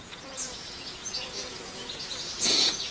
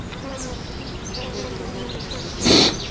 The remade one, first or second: first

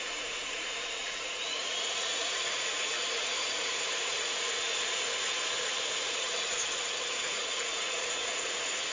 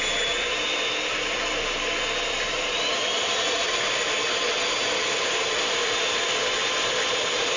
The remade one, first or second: first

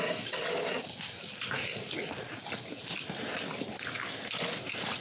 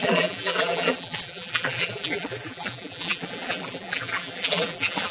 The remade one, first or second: second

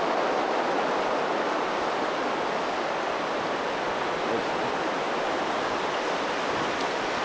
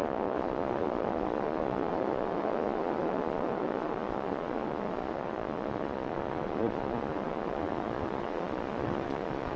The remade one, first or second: second